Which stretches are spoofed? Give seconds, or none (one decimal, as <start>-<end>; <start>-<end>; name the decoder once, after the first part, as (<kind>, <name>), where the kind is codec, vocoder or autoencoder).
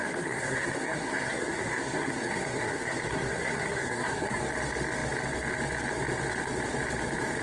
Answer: 0.0-4.4 (codec, SNAC)